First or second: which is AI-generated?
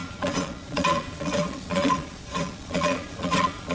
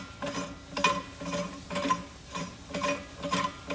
first